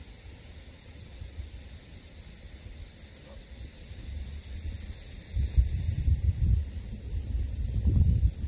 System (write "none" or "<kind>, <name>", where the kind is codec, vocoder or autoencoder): none